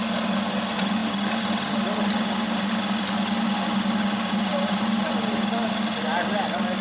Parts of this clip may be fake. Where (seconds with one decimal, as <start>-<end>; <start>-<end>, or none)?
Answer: none